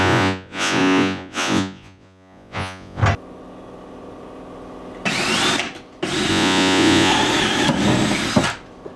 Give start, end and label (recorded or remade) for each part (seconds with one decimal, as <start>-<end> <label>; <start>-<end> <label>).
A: 0.0-3.0 remade; 3.0-6.3 recorded; 6.3-7.1 remade; 7.1-9.0 recorded